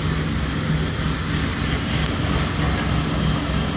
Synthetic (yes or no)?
no